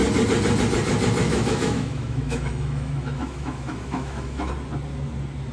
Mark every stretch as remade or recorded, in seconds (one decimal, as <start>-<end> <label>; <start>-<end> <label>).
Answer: 0.0-1.2 recorded; 1.2-4.5 remade; 4.5-5.5 recorded